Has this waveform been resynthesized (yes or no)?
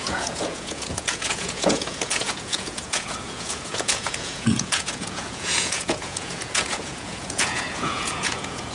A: yes